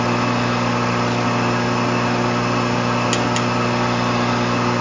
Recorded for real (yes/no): yes